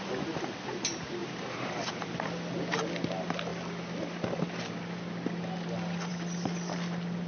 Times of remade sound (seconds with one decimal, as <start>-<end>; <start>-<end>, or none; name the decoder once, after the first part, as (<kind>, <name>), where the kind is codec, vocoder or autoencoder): 1.2-2.3 (vocoder, BigVGAN v2)